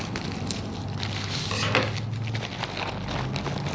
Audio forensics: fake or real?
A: real